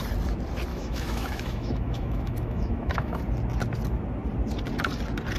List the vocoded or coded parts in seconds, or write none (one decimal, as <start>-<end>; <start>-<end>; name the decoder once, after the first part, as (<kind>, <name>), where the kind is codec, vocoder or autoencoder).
0.7-3.2 (autoencoder, DAC-VAE)

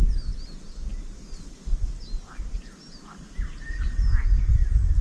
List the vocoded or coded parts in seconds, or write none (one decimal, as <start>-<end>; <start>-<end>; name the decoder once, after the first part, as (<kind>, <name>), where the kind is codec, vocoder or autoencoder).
none